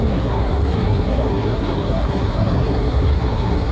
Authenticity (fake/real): fake